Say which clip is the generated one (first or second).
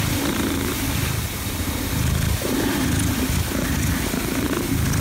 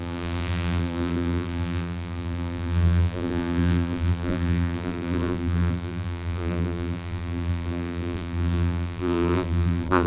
second